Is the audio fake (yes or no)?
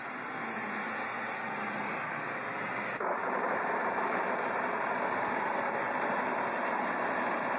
no